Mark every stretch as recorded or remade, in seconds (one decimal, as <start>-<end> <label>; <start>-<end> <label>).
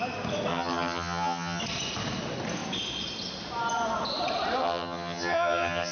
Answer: 0.0-0.5 recorded; 0.5-1.6 remade; 1.6-4.6 recorded; 4.6-5.9 remade